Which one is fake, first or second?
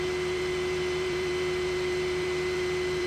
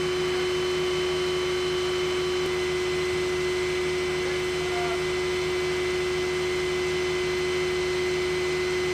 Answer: first